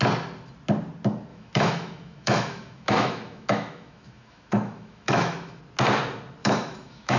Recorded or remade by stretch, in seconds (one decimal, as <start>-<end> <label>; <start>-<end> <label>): 0.0-1.3 recorded; 1.3-5.6 remade; 5.6-6.4 recorded; 6.4-7.2 remade